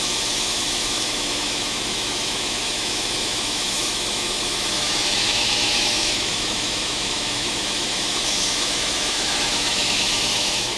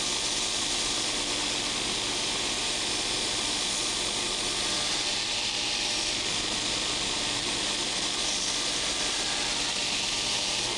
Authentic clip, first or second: second